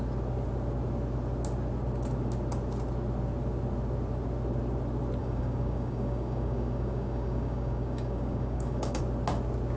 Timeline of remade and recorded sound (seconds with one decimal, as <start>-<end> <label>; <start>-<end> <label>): 0.0-5.2 recorded; 5.2-9.0 remade; 9.0-9.8 recorded